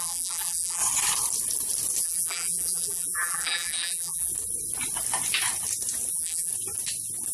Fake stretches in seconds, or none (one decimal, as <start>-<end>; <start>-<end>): 0.0-0.8; 2.0-4.3; 6.1-6.5